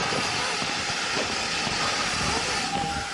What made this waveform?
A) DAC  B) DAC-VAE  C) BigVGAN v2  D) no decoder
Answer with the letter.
D